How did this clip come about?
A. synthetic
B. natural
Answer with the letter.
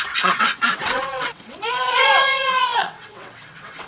A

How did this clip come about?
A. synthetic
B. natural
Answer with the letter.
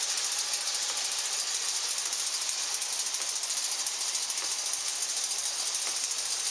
B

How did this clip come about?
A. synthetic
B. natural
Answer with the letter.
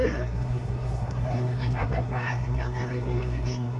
A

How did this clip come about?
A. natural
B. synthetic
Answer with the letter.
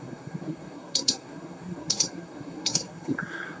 B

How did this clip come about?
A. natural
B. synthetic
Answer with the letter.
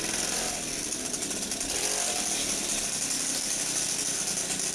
A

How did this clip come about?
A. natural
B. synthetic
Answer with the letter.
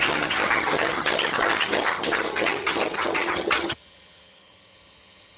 B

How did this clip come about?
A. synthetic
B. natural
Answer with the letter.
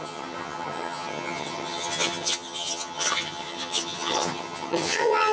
A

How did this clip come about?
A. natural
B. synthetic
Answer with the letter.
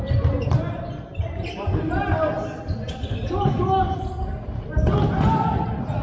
A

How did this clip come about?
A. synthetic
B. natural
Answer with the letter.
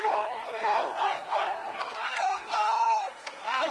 A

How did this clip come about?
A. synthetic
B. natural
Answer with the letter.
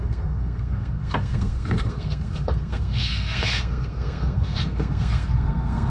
A